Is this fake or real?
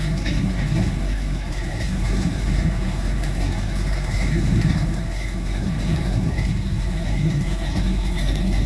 fake